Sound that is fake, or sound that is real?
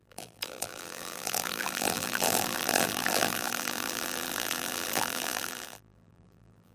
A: fake